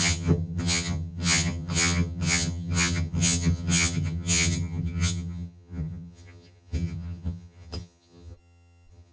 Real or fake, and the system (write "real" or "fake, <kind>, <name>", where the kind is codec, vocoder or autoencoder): fake, vocoder, HiFi-GAN